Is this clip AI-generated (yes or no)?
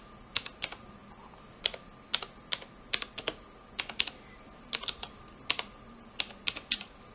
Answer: no